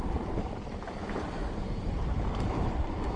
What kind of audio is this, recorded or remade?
remade